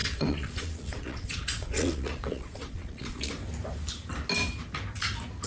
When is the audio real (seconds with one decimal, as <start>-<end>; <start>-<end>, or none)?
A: 3.3-5.5